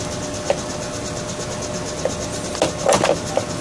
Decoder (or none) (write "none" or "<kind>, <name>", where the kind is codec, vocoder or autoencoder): none